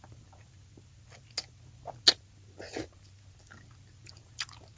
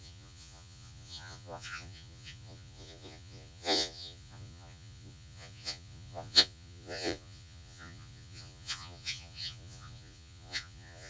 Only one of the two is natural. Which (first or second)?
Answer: first